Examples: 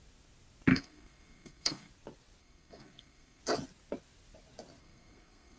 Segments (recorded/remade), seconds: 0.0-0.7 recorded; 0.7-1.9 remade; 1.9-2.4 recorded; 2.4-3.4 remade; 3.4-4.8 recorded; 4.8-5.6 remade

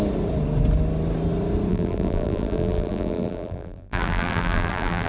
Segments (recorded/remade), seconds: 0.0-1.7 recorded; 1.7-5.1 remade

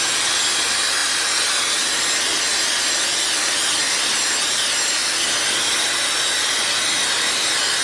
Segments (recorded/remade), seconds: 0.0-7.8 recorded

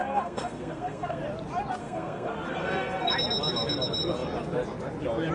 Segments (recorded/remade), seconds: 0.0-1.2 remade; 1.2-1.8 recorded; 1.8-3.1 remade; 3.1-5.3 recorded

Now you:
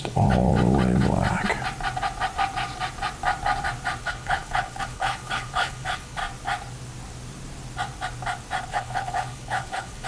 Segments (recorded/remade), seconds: 0.0-0.5 remade; 0.5-4.0 recorded; 4.0-6.2 remade; 6.2-8.7 recorded; 8.7-10.1 remade

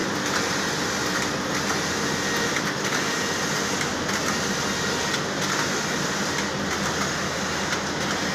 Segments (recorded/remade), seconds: 0.0-8.3 recorded